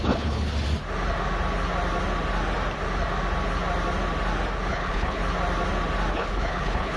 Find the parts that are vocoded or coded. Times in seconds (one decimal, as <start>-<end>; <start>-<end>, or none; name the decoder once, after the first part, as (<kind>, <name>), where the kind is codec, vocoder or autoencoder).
0.0-0.5 (codec, HILCodec); 4.7-5.2; 6.1-7.0